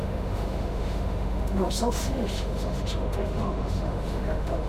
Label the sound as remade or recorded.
remade